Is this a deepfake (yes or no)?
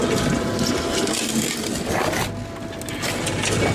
no